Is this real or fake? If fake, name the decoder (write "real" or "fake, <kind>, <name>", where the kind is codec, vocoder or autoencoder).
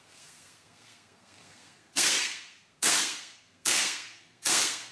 fake, codec, SNAC